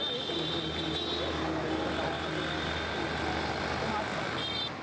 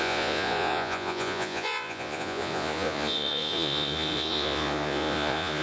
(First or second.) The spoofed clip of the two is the second